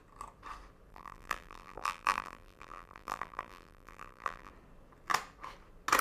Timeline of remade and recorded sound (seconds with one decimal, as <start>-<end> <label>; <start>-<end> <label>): 0.0-0.9 recorded; 0.9-4.5 remade; 4.5-6.0 recorded